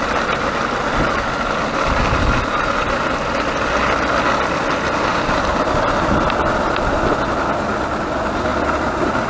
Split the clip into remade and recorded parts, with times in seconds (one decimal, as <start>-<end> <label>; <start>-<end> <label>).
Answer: 0.0-9.3 recorded